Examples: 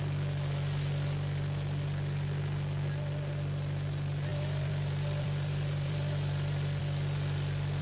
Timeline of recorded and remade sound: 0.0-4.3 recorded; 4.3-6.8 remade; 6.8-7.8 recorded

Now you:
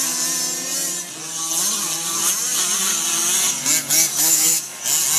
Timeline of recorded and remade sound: 0.0-4.1 recorded; 4.1-4.8 remade; 4.8-5.2 recorded

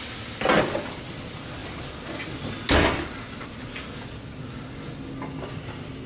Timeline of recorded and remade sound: 0.0-6.1 recorded

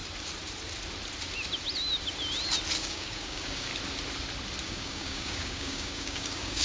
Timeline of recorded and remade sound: 0.0-2.8 recorded; 2.8-3.7 remade; 3.7-4.6 recorded; 4.6-6.6 remade

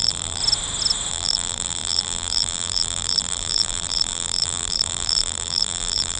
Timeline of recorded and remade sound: 0.0-0.4 remade; 0.4-1.1 recorded; 1.1-6.2 remade